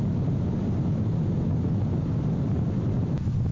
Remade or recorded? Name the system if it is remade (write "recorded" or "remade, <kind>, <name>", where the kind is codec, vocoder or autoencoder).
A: recorded